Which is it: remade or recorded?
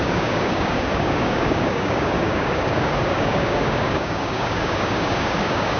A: remade